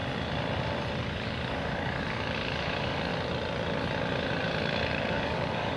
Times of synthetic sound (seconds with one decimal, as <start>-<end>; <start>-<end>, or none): 1.0-3.1; 4.9-5.8